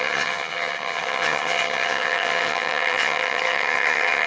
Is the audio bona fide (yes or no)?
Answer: no